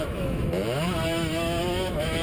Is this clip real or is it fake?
fake